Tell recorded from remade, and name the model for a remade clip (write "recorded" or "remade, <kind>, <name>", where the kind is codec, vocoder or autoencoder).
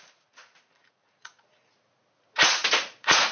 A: remade, vocoder, Vocos